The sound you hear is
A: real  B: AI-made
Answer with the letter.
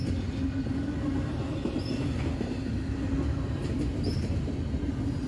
A